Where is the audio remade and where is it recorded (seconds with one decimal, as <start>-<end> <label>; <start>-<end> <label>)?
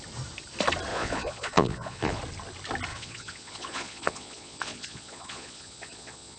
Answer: 0.0-0.9 recorded; 0.9-2.2 remade; 2.2-2.9 recorded; 2.9-6.4 remade